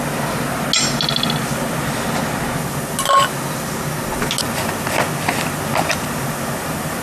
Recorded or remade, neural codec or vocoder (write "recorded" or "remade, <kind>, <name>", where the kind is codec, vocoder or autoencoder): recorded